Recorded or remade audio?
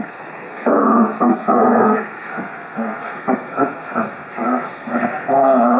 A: remade